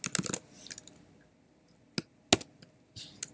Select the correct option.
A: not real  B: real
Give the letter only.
B